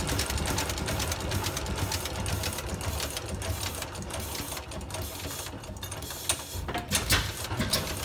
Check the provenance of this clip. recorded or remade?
recorded